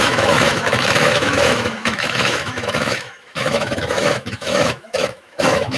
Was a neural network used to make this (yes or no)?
yes